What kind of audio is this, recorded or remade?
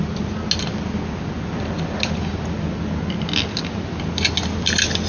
recorded